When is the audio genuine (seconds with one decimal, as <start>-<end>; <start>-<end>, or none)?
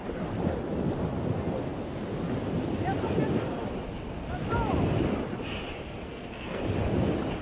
0.0-6.0; 6.6-7.4